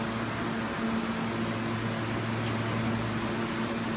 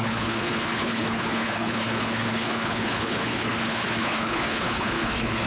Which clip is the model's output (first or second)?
second